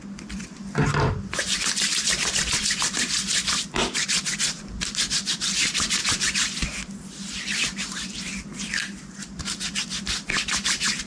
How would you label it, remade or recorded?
remade